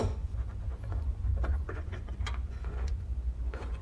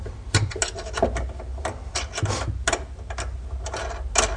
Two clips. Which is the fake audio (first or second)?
first